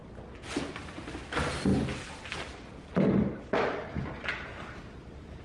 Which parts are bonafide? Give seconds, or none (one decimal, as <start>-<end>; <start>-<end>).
0.0-5.4